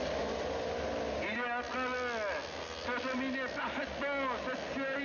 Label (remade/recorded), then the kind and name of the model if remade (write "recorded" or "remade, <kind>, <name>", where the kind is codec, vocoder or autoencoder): recorded